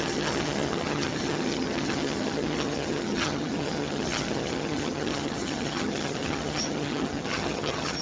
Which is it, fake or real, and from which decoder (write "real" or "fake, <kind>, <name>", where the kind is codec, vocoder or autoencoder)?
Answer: fake, vocoder, HiFi-GAN